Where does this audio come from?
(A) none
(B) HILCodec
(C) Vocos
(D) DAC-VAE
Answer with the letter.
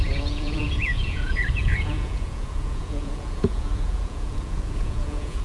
C